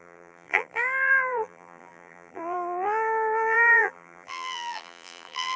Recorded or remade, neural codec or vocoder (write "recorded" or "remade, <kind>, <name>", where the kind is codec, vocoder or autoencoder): remade, vocoder, BigVGAN v2